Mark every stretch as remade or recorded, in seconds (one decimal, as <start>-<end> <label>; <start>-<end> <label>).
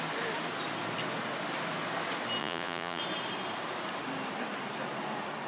0.0-2.4 recorded; 2.4-3.0 remade; 3.0-5.5 recorded